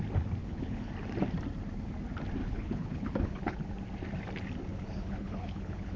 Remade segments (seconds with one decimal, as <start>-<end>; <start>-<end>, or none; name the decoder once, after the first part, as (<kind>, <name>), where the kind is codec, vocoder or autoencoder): 0.4-0.9 (codec, HILCodec); 2.4-3.6; 4.7-6.0